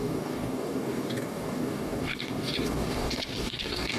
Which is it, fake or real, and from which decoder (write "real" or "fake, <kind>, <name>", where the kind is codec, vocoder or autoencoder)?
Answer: fake, codec, DAC